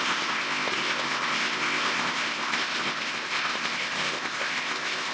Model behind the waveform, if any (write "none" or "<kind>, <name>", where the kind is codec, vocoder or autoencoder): codec, ZipCodec